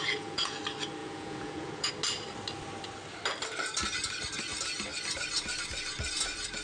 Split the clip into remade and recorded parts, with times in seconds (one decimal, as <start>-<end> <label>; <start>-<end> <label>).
0.0-0.6 remade; 0.6-1.0 recorded; 1.0-1.9 remade; 1.9-6.6 recorded